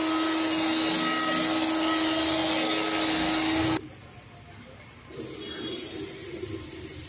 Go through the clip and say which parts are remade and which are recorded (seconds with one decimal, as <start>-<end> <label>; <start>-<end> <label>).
0.0-7.1 recorded